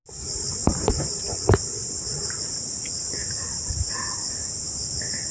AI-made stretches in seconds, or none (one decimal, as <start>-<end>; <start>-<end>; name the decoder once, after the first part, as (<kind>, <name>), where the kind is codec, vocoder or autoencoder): 0.6-1.2 (vocoder, BigVGAN v2); 1.8-2.4